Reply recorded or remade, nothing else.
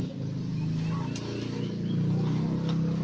recorded